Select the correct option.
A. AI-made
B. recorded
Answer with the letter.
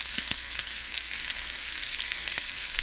A